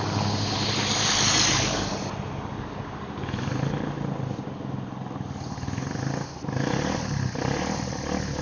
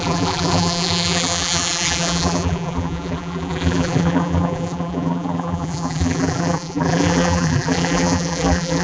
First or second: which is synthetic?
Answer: second